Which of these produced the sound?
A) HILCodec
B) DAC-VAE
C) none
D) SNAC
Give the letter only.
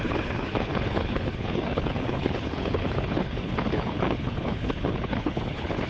A